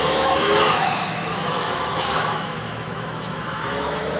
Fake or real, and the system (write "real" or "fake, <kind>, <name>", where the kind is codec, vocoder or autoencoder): fake, autoencoder, DAC-VAE